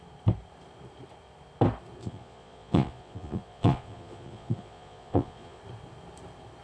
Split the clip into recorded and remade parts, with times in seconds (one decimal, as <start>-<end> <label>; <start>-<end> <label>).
0.0-2.0 recorded; 2.0-5.6 remade; 5.6-6.6 recorded

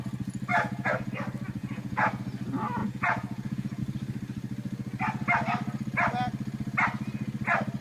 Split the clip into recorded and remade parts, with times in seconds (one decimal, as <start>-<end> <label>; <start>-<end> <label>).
0.0-0.5 recorded; 0.5-1.1 remade; 1.1-1.6 recorded; 1.6-2.2 remade; 2.2-2.8 recorded; 2.8-3.8 remade; 3.8-7.8 recorded

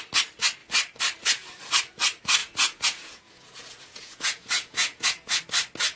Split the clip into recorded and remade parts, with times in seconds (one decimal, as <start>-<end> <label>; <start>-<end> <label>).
0.0-2.4 recorded; 2.4-5.4 remade; 5.4-6.0 recorded

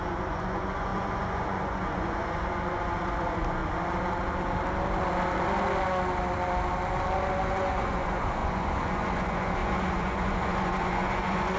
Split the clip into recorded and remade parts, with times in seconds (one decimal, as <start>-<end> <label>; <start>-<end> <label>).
0.0-3.6 remade; 3.6-7.5 recorded; 7.5-11.6 remade